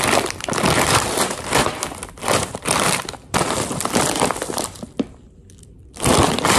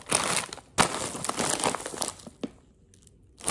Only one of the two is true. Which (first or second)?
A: second